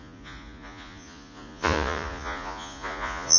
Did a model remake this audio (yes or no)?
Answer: yes